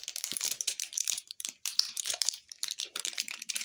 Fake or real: fake